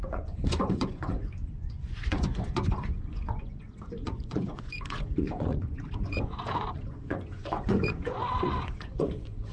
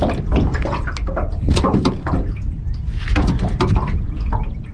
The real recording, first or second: second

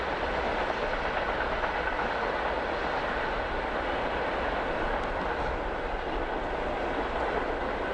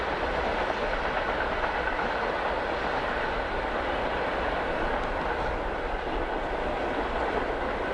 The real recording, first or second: first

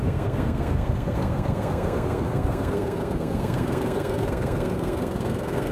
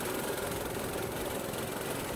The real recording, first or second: second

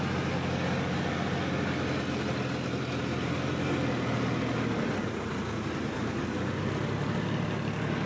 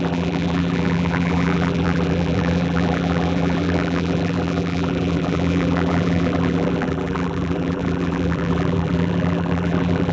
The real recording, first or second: first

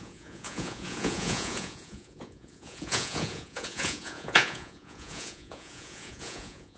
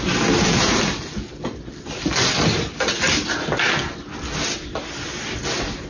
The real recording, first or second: second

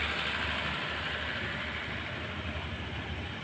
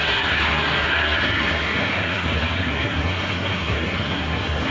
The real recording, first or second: first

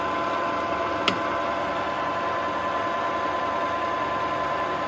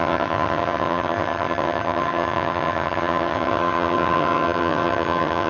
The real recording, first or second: first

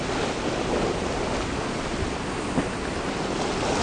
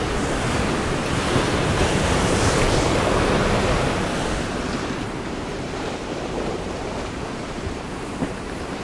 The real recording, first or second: first